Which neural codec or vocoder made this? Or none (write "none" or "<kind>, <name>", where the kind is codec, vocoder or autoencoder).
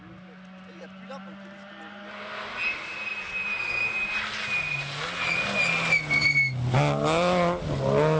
none